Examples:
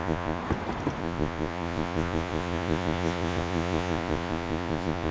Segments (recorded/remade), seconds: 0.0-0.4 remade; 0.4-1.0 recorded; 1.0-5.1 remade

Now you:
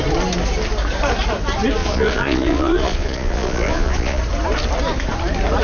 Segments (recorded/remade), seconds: 0.0-1.8 recorded; 1.8-4.2 remade; 4.2-5.6 recorded

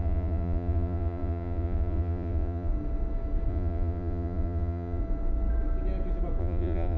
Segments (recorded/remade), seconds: 0.0-2.7 remade; 2.7-3.5 recorded; 3.5-5.0 remade; 5.0-6.4 recorded; 6.4-7.0 remade

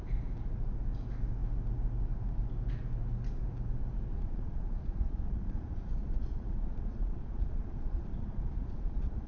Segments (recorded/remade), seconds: 0.0-4.1 recorded; 4.1-9.3 remade

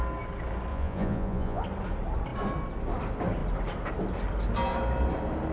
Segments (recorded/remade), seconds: 0.0-0.7 recorded; 0.7-1.6 remade; 1.6-5.5 recorded

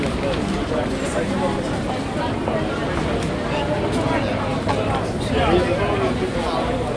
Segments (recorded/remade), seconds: 0.0-7.0 recorded